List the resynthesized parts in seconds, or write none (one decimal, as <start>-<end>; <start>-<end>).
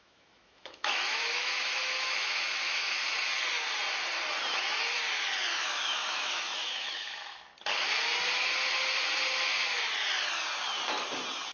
0.0-3.0; 5.6-7.5